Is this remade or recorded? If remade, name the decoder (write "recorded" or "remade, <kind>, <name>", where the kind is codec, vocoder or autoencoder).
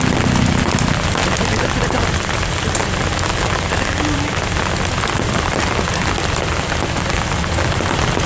recorded